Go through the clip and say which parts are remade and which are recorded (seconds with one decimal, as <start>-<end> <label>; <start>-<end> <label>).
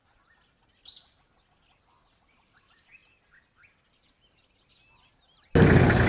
0.0-6.1 recorded